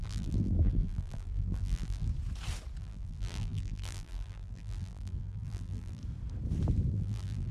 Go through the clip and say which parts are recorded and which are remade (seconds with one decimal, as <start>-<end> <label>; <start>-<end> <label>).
0.0-2.1 remade; 2.1-2.8 recorded; 2.8-6.0 remade; 6.0-6.9 recorded; 6.9-7.5 remade